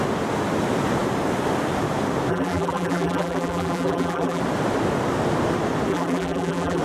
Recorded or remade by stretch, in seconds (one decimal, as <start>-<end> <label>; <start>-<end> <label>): 0.0-2.3 recorded; 2.3-4.4 remade; 4.4-5.9 recorded; 5.9-6.8 remade